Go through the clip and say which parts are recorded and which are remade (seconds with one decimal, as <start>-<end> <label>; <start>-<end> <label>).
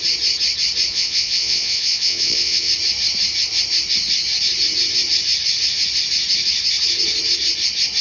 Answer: 0.0-0.9 recorded; 0.9-2.7 remade; 2.7-8.0 recorded